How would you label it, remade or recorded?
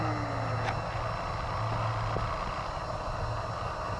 recorded